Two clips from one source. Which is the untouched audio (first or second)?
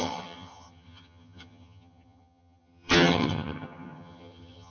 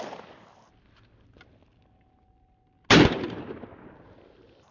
second